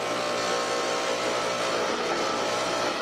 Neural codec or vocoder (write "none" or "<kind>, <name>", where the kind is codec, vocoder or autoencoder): none